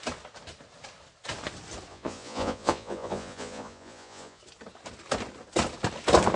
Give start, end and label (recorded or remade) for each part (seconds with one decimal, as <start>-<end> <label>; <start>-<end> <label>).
0.0-1.9 recorded; 1.9-4.4 remade; 4.4-6.4 recorded